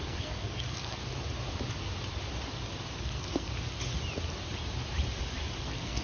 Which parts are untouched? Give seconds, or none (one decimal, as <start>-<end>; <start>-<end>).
1.0-3.0; 3.5-5.6